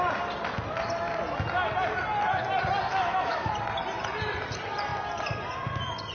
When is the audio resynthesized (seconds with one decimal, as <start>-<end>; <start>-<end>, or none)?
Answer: 2.9-3.5